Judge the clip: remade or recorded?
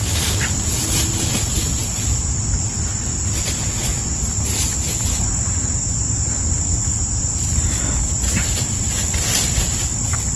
recorded